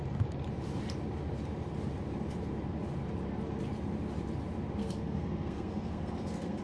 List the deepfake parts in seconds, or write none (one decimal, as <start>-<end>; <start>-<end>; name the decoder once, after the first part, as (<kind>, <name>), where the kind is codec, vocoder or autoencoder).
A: 4.8-6.6 (codec, SNAC)